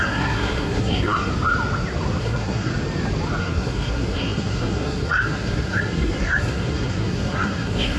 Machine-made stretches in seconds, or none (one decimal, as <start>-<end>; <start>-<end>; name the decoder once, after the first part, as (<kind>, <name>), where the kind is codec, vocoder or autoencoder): 0.0-1.3 (codec, SNAC); 2.2-2.7; 3.4-8.0